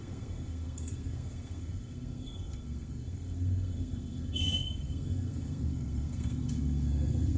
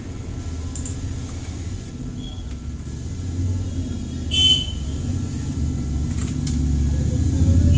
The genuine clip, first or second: second